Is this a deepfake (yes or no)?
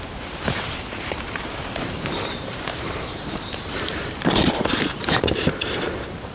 yes